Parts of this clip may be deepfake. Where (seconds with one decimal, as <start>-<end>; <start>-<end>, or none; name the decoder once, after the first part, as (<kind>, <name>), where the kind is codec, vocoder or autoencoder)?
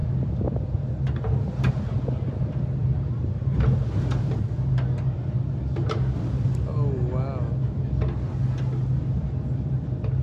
none